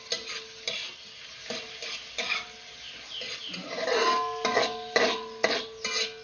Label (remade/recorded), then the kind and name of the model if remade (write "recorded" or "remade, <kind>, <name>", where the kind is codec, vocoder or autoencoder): recorded